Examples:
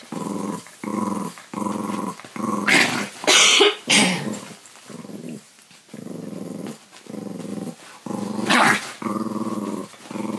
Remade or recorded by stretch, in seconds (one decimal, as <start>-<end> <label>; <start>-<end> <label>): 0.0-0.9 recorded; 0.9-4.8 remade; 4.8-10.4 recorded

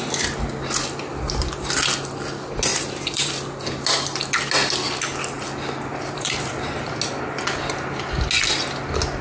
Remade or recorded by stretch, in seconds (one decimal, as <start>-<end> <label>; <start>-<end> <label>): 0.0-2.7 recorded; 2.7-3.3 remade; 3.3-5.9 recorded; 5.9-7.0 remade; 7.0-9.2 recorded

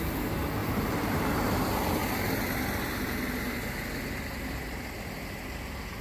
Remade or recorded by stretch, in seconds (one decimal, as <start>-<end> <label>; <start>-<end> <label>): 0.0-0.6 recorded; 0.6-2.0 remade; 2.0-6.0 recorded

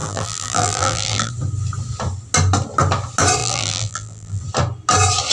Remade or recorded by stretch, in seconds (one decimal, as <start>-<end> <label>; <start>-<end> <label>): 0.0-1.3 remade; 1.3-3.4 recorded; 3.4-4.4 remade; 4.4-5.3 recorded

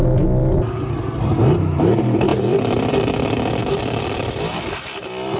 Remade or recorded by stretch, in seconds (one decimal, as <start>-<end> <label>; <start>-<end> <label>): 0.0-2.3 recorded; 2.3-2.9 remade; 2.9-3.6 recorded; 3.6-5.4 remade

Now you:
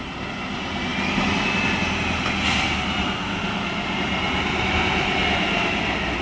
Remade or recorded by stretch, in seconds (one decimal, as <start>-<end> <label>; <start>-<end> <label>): 0.0-6.2 recorded

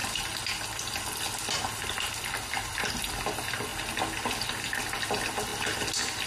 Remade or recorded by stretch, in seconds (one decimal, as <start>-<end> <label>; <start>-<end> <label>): 0.0-6.3 recorded